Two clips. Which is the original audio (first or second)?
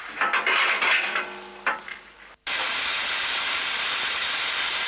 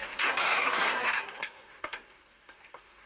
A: first